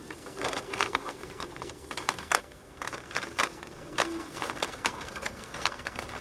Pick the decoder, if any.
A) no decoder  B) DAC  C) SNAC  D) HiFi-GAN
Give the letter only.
C